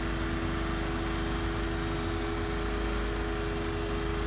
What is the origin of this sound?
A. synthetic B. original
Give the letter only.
B